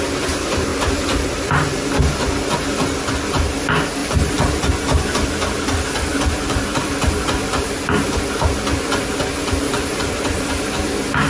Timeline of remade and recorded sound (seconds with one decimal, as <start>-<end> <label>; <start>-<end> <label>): 0.0-0.7 recorded; 0.7-1.8 remade; 1.8-4.0 recorded; 4.0-4.6 remade; 4.6-9.4 recorded; 9.4-10.5 remade; 10.5-11.3 recorded